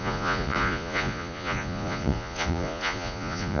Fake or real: fake